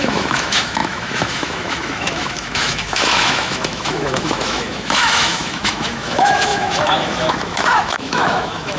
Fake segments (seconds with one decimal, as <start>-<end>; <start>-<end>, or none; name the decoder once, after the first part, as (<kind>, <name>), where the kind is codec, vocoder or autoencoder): 0.0-8.8 (autoencoder, DAC-VAE)